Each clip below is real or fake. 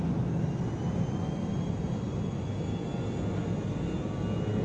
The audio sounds real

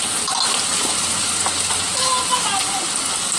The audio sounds real